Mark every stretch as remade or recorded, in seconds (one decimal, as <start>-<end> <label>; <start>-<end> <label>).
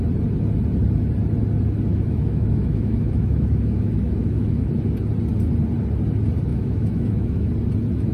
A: 0.0-1.9 recorded; 1.9-4.8 remade; 4.8-6.5 recorded; 6.5-7.5 remade; 7.5-8.1 recorded